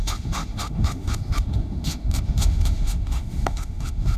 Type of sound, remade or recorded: remade